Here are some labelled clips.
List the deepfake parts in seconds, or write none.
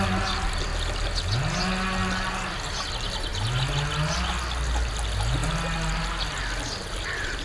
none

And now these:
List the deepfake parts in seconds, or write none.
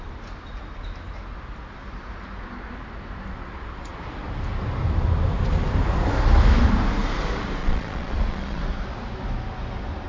7.6-8.6 (vocoder, Vocos)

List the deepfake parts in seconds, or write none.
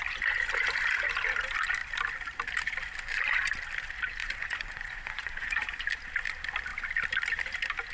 4.2-5.8 (vocoder, Vocos)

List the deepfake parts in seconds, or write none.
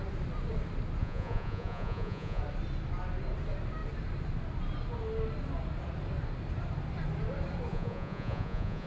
1.0-2.4 (vocoder, Vocos); 7.7-8.9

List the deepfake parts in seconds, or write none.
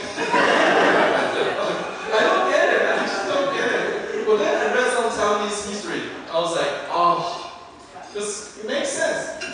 0.0-4.1 (vocoder, Vocos); 5.8-9.5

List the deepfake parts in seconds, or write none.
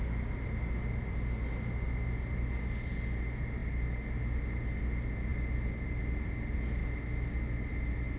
none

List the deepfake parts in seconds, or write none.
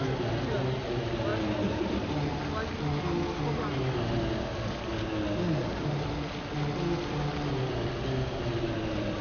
none